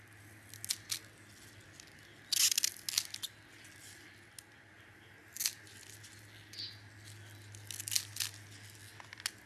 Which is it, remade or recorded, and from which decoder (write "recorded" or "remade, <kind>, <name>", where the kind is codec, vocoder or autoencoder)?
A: recorded